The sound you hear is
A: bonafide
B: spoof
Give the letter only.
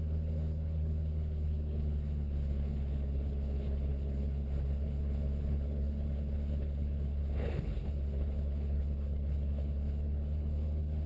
B